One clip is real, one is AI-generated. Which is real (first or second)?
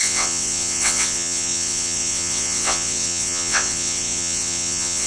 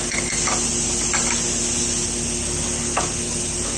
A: second